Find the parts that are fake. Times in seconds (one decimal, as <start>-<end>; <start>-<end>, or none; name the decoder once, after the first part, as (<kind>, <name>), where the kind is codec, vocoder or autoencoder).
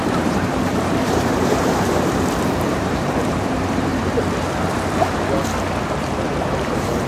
0.0-3.9 (vocoder, BigVGAN v2); 6.0-7.1